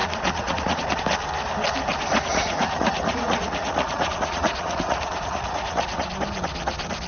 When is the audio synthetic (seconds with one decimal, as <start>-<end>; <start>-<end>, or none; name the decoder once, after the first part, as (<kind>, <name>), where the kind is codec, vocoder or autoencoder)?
0.0-1.0 (vocoder, Vocos); 2.3-6.1